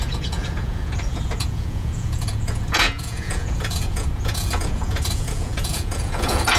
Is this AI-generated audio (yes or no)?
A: yes